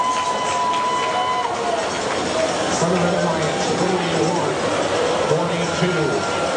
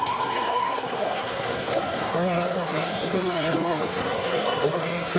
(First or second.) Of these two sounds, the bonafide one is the first